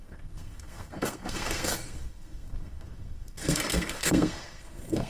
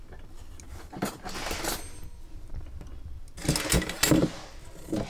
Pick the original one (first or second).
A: second